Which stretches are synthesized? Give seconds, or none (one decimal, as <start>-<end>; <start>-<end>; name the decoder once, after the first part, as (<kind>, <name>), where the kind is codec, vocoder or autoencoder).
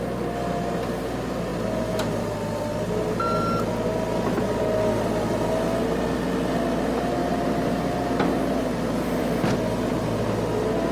none